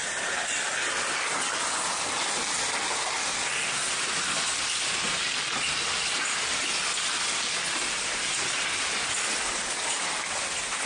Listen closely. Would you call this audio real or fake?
real